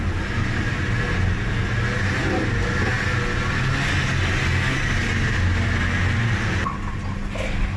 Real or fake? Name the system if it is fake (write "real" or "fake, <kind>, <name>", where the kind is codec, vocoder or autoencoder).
real